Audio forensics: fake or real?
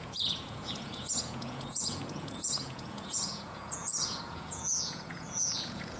fake